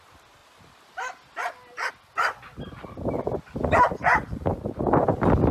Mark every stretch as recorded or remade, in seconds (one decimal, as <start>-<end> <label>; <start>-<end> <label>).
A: 0.0-2.4 remade; 2.4-3.1 recorded; 3.1-5.5 remade